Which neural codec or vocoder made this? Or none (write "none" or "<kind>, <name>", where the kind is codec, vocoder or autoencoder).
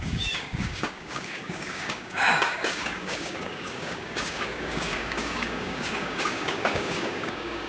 codec, DAC